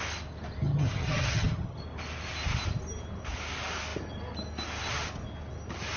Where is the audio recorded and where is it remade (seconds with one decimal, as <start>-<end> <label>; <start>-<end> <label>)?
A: 0.0-0.6 recorded; 0.6-1.8 remade; 1.8-6.0 recorded